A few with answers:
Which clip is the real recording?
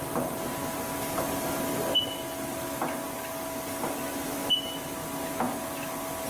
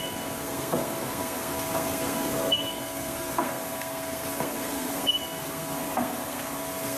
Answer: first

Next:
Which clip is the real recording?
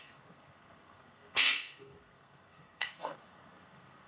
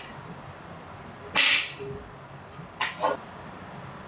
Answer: second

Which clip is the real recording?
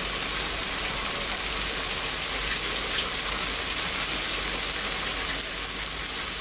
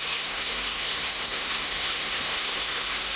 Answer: first